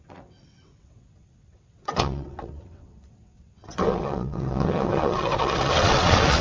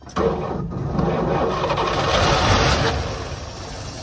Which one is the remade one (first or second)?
first